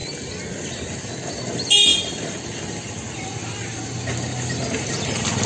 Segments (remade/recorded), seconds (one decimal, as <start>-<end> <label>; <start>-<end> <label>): 0.0-5.5 recorded